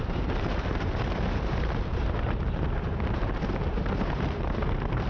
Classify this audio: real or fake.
fake